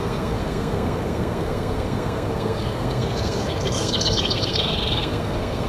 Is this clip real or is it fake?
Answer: fake